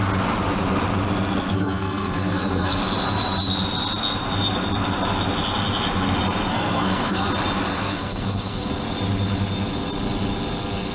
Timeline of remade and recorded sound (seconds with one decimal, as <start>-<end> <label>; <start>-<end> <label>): 0.0-1.5 recorded; 1.5-2.8 remade; 2.8-6.5 recorded; 6.5-7.3 remade; 7.3-7.7 recorded; 7.7-8.7 remade; 8.7-10.9 recorded